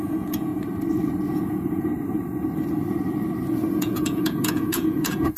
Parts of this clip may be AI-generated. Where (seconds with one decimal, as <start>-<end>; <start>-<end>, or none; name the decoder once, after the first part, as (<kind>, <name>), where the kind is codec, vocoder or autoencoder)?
0.0-0.5 (vocoder, Vocos); 1.3-1.9; 3.7-5.4